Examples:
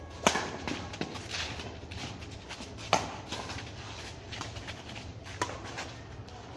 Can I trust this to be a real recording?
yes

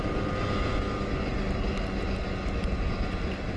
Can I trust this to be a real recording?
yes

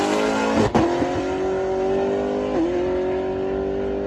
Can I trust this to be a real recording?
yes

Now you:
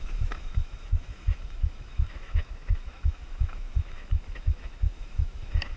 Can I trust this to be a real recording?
no